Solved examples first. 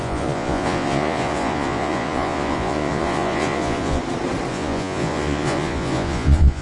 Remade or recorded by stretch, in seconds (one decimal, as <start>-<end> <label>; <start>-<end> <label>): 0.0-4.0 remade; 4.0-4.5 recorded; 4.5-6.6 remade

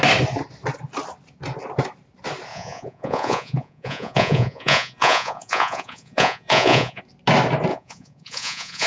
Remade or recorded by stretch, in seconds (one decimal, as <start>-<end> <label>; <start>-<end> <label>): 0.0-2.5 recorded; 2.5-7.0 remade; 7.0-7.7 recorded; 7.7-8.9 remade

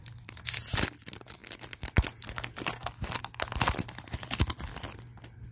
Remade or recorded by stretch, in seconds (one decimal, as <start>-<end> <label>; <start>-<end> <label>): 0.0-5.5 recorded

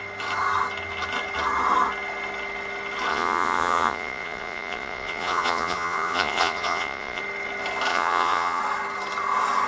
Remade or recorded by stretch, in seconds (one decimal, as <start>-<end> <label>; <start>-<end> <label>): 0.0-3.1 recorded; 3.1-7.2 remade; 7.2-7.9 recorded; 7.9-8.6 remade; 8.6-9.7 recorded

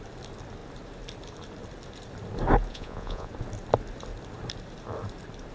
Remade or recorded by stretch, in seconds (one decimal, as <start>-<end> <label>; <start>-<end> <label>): 0.0-2.7 recorded; 2.7-3.3 remade; 3.3-5.5 recorded

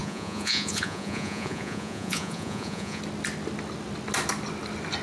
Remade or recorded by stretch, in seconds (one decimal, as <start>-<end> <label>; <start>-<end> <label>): 0.0-3.0 remade; 3.0-5.0 recorded